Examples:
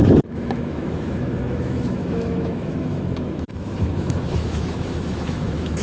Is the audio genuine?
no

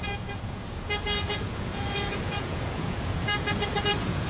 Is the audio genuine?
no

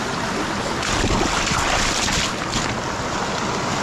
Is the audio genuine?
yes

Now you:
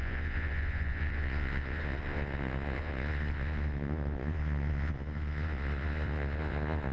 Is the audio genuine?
no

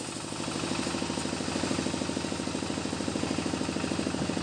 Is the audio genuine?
yes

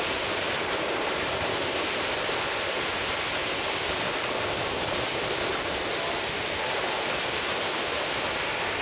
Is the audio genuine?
yes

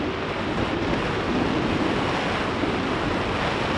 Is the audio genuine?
yes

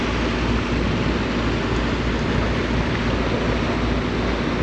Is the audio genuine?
yes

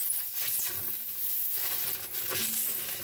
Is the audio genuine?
yes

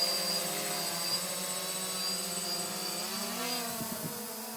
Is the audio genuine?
yes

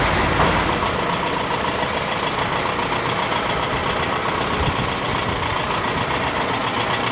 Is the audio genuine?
yes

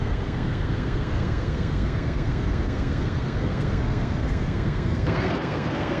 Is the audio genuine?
no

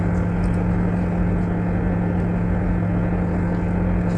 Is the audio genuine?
yes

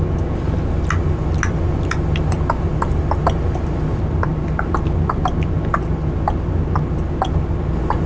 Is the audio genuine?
yes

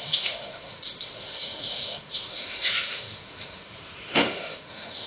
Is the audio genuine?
no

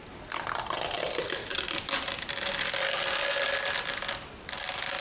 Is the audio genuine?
yes